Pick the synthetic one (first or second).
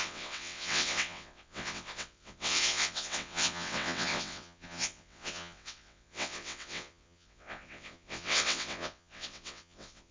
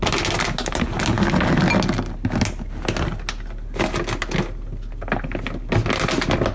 first